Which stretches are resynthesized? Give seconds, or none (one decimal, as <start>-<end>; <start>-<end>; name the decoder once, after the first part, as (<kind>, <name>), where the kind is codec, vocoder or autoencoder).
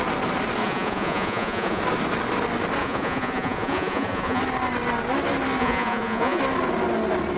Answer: 0.6-1.8 (vocoder, Vocos); 2.8-4.4; 5.6-6.4